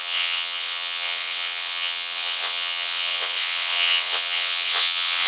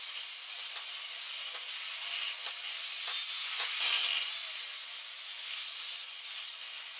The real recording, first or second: second